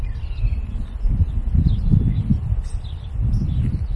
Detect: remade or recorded recorded